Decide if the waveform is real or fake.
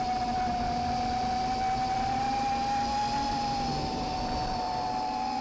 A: real